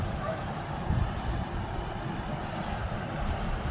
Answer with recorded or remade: recorded